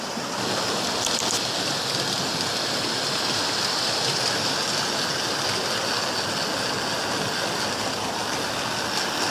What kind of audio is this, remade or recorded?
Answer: recorded